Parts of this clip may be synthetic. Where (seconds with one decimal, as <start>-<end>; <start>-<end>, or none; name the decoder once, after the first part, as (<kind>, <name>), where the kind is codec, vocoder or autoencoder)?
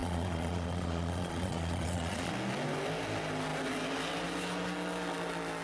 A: 0.0-2.3 (vocoder, Vocos)